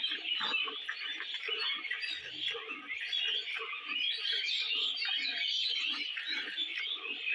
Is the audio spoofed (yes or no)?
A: no